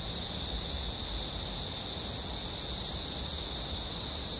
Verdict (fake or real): real